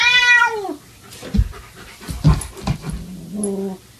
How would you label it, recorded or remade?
recorded